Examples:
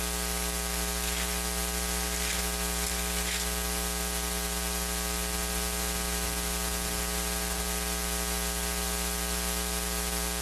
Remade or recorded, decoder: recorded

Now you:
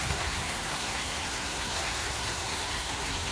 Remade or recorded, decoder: remade, codec, SNAC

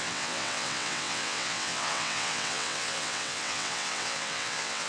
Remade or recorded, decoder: remade, vocoder, WaveNeXt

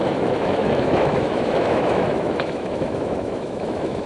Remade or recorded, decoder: remade, autoencoder, DAC-VAE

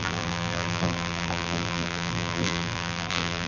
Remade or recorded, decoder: remade, vocoder, BigVGAN v2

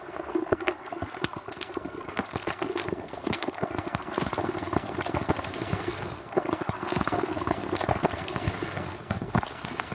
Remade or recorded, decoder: remade, codec, SNAC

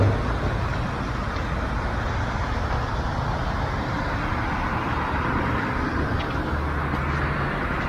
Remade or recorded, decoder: recorded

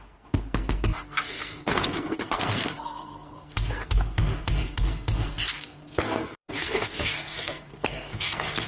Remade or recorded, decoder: remade, codec, SNAC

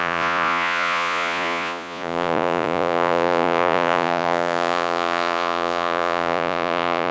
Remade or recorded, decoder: remade, vocoder, Vocos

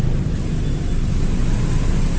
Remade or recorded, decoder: recorded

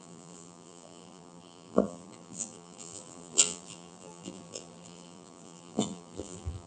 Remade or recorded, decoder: remade, vocoder, BigVGAN v2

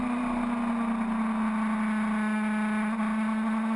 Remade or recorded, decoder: recorded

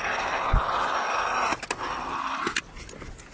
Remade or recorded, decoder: recorded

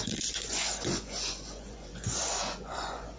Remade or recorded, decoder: remade, vocoder, Vocos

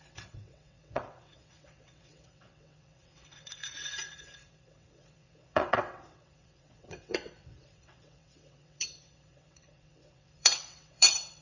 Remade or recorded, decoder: remade, vocoder, WaveNeXt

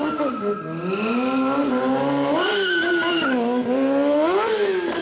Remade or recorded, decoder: recorded